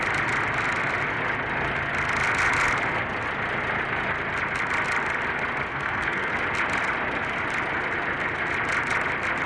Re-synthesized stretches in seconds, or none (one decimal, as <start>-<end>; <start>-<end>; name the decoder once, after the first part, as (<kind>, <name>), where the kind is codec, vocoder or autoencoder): 5.7-6.3 (codec, SNAC)